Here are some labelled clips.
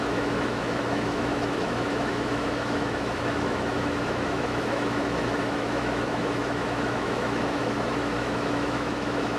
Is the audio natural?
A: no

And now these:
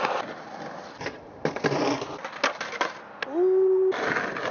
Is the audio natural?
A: yes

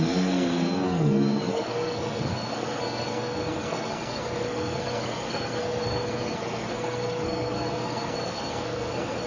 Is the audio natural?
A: no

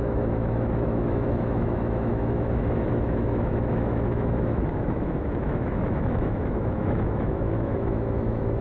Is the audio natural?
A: no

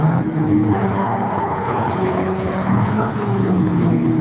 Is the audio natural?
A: no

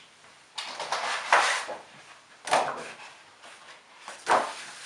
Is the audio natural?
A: yes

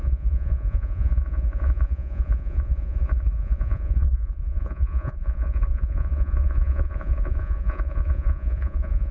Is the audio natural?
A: no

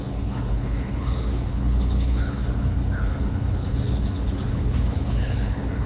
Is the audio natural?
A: no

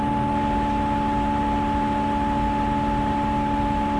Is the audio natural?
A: yes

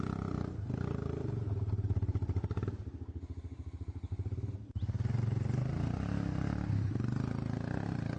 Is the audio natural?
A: yes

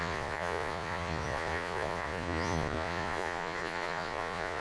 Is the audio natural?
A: no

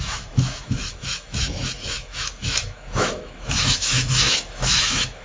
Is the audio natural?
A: no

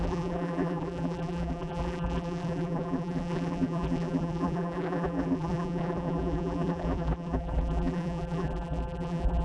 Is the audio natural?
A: no